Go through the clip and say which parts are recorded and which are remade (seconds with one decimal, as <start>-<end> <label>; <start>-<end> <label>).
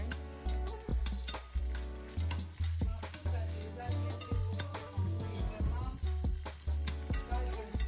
0.0-3.2 recorded; 3.2-3.8 remade; 3.8-4.8 recorded; 4.8-5.4 remade; 5.4-7.9 recorded